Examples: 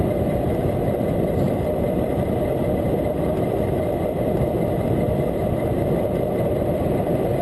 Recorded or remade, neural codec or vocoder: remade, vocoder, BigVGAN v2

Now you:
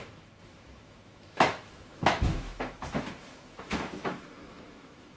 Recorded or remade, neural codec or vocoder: remade, autoencoder, DAC-VAE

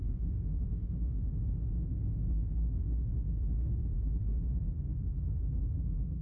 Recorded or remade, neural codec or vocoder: remade, autoencoder, DAC-VAE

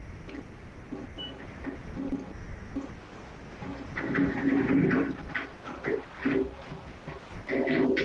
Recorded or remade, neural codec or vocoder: recorded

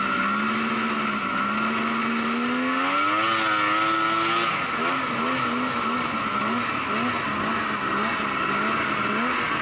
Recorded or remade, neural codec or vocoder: recorded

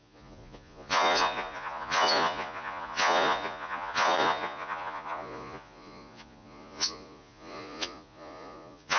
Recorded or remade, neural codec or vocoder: remade, vocoder, Vocos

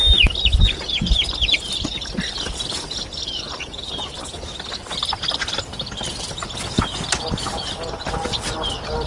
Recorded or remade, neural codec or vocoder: recorded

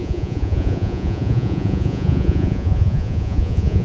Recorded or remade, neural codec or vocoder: remade, vocoder, Vocos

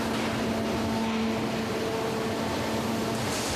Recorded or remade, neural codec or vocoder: recorded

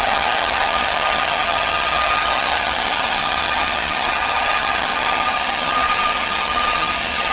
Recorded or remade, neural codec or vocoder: remade, vocoder, HiFi-GAN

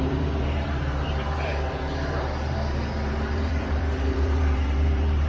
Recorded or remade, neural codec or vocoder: remade, vocoder, BigVGAN v2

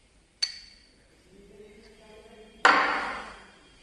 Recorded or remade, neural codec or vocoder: recorded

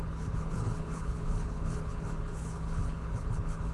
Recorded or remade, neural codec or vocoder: remade, codec, HILCodec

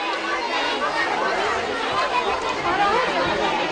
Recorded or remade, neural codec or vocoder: recorded